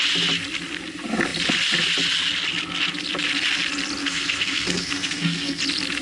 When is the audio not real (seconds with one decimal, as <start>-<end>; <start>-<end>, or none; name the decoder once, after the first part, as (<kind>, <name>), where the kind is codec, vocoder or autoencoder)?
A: 4.0-5.6 (codec, SNAC)